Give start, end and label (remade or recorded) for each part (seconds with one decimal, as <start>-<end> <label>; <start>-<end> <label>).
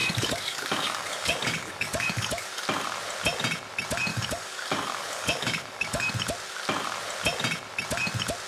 0.0-2.6 remade; 2.6-4.1 recorded; 4.1-6.1 remade; 6.1-8.5 recorded